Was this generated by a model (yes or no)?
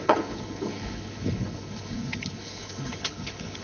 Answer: yes